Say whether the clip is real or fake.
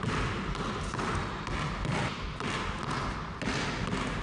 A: real